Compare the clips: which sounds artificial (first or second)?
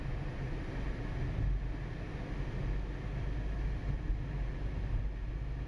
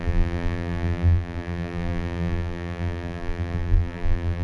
second